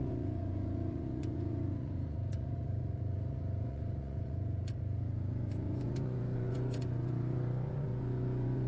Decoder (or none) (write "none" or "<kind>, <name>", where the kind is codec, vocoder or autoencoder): vocoder, Vocos